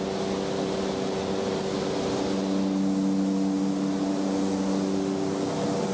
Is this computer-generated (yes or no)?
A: no